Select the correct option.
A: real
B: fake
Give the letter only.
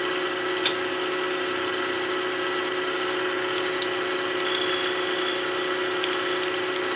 A